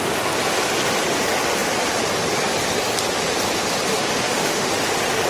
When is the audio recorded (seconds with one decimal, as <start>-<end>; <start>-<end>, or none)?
0.0-3.9; 4.7-5.3